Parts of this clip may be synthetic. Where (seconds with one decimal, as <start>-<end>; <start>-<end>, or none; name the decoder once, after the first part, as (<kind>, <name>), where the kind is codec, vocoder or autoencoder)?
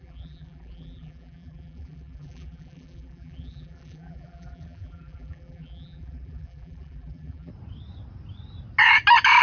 0.0-7.5 (vocoder, BigVGAN v2)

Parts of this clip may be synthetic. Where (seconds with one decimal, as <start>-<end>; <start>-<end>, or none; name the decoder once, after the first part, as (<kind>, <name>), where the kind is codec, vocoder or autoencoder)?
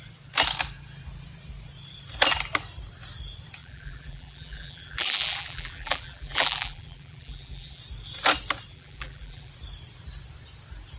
3.6-7.8 (vocoder, BigVGAN v2); 8.7-9.5